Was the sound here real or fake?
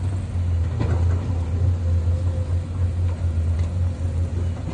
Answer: real